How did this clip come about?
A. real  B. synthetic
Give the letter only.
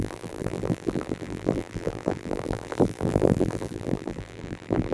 B